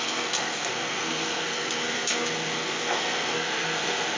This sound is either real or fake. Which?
fake